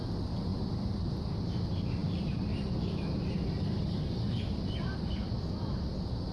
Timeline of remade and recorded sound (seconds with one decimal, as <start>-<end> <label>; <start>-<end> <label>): 0.0-6.3 recorded